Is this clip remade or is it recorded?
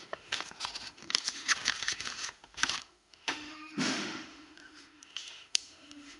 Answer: remade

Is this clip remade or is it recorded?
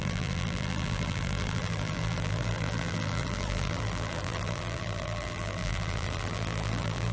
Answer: remade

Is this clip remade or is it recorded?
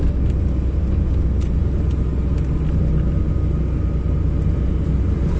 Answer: recorded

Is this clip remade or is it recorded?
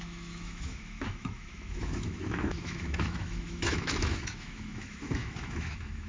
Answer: remade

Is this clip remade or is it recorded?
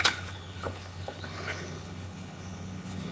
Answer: remade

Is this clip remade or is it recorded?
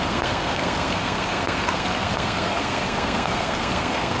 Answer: remade